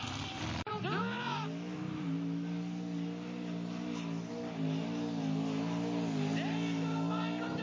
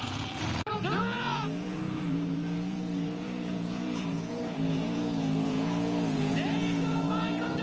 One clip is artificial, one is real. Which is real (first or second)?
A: first